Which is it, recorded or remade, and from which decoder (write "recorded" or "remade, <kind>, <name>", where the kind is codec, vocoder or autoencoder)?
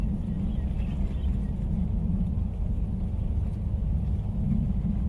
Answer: recorded